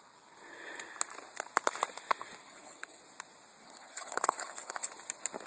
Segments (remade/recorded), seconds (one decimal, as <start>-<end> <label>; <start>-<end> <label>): 0.0-2.4 recorded; 2.4-3.0 remade; 3.0-3.6 recorded; 3.6-4.9 remade; 4.9-5.5 recorded